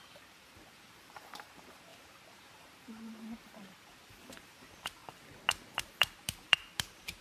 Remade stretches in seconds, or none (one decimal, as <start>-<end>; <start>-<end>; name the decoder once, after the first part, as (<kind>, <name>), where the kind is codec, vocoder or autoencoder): 0.0-5.0 (vocoder, BigVGAN v2); 5.8-7.2